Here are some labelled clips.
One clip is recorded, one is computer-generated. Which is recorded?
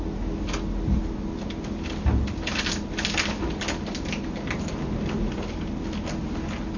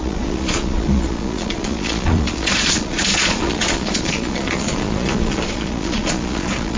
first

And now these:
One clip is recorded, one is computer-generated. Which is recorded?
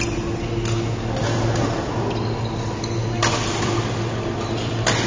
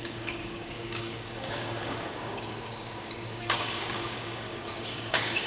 first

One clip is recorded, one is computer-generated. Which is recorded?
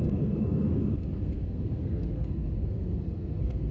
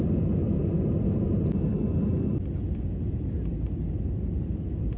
second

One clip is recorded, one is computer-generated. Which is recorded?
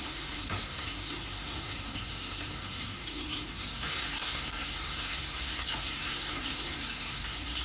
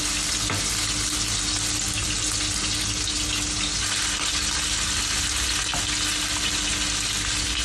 second